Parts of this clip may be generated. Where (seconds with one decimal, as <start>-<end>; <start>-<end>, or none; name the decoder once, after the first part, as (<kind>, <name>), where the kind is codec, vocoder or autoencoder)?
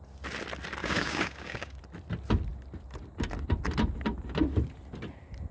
0.8-1.8 (codec, DAC)